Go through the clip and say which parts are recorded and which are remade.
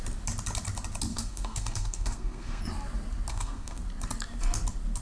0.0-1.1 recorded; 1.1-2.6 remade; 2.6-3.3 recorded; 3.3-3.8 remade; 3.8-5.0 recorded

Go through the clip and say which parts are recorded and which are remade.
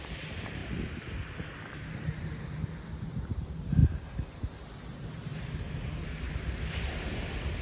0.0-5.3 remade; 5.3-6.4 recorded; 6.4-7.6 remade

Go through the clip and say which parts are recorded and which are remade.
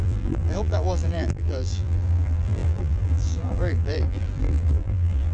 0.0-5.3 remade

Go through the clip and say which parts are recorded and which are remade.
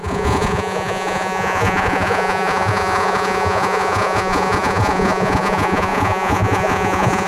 0.0-7.3 remade